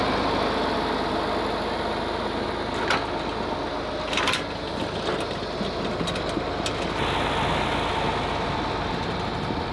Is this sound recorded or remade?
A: recorded